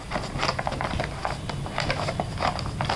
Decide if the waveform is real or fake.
real